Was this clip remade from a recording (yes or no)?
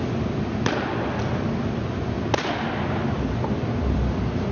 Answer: no